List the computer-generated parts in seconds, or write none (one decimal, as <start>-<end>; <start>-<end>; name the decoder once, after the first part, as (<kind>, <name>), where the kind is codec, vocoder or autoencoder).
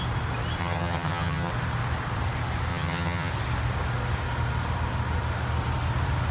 0.6-1.5 (vocoder, HiFi-GAN); 2.7-3.3